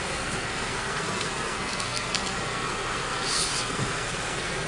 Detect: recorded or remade remade